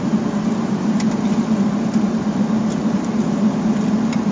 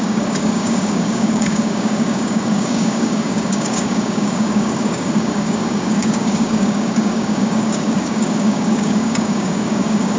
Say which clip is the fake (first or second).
second